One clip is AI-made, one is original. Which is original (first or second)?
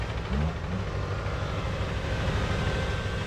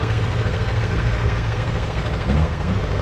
first